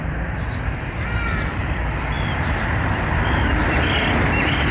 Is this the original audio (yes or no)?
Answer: yes